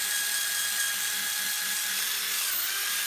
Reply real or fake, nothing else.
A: fake